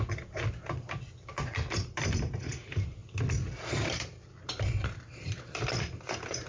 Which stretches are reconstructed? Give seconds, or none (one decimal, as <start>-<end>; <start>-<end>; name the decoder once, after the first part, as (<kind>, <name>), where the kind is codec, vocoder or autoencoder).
0.0-3.0 (vocoder, BigVGAN v2); 3.7-6.5

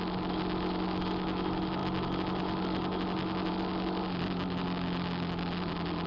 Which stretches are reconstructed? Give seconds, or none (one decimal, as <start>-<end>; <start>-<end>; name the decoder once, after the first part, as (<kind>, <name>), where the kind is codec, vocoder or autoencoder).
none

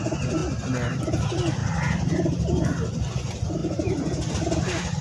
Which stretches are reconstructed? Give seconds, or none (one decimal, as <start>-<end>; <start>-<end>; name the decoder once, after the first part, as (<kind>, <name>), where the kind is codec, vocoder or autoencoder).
1.6-2.7 (vocoder, BigVGAN v2)